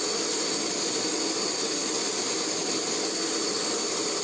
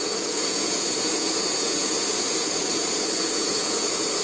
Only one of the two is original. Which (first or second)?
first